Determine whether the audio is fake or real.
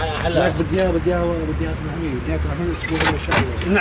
real